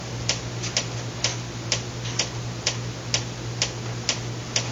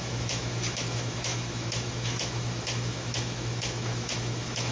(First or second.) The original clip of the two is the first